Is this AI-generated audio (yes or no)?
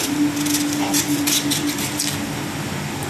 no